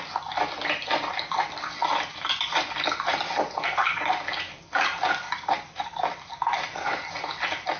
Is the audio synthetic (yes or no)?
yes